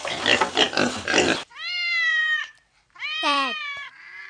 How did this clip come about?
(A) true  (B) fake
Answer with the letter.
B